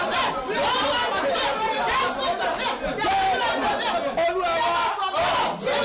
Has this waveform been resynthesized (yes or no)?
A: no